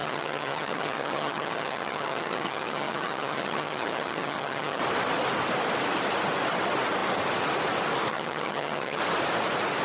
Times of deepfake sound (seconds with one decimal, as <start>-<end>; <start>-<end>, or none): 0.0-4.8; 8.1-9.0